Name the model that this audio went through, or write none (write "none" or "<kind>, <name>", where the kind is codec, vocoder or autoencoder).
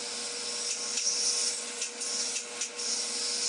none